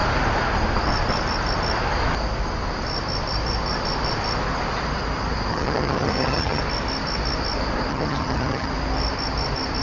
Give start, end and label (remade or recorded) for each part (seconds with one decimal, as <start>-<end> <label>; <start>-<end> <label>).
0.0-5.5 recorded; 5.5-6.6 remade; 6.6-7.9 recorded; 7.9-8.7 remade; 8.7-9.8 recorded